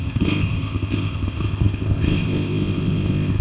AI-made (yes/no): yes